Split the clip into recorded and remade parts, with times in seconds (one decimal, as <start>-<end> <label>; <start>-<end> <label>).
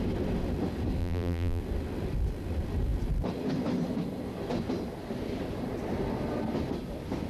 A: 0.0-1.0 recorded; 1.0-1.6 remade; 1.6-7.3 recorded